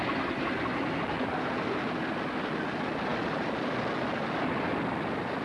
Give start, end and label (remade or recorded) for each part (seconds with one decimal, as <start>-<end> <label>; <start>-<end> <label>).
0.0-5.4 recorded